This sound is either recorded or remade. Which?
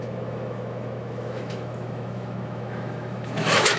remade